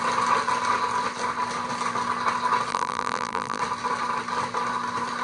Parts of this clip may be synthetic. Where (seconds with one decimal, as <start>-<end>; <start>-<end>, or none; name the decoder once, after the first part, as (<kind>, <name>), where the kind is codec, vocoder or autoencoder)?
2.7-3.6 (vocoder, BigVGAN v2)